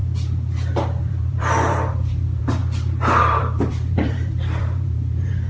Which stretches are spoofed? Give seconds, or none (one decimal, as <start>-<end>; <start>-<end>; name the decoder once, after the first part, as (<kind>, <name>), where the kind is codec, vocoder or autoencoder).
1.0-2.6 (vocoder, BigVGAN v2); 3.2-5.5